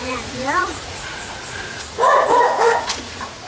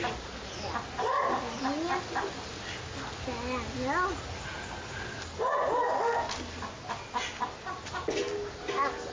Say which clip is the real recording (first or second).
second